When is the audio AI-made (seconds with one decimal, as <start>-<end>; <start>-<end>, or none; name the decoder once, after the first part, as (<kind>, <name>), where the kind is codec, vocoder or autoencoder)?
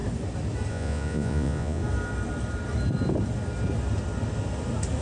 0.7-1.8 (vocoder, Vocos)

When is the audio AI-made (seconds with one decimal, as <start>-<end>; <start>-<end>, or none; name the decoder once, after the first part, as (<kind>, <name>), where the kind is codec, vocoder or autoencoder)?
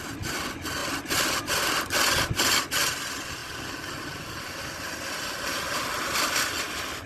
none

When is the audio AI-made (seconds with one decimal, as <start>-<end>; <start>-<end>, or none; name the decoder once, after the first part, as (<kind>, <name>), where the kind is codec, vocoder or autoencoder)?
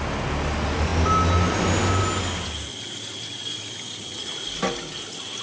4.0-4.5 (vocoder, Vocos)